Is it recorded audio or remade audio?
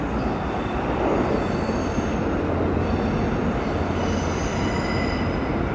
recorded